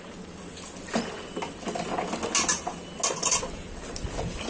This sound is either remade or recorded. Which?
recorded